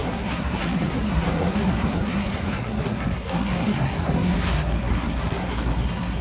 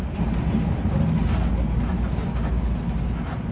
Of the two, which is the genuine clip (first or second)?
second